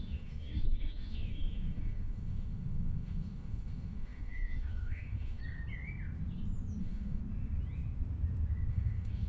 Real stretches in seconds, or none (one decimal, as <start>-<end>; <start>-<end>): 5.4-6.8; 7.2-8.7